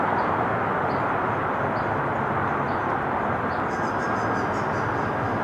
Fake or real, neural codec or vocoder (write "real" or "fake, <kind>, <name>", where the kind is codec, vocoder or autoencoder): real